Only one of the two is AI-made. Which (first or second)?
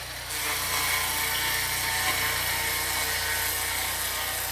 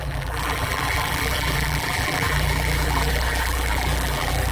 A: second